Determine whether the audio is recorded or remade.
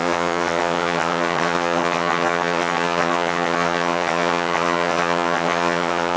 remade